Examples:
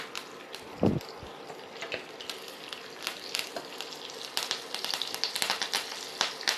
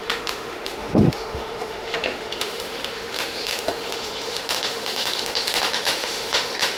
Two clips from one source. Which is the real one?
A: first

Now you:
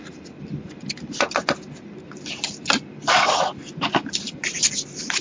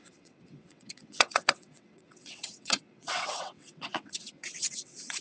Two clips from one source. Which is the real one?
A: first